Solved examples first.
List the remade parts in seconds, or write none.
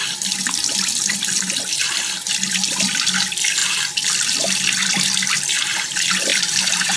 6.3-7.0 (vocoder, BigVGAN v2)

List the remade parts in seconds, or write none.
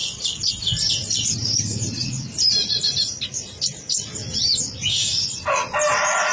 1.0-3.2 (vocoder, BigVGAN v2)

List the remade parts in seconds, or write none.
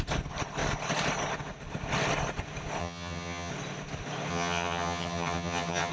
2.8-3.5 (vocoder, HiFi-GAN); 4.3-5.9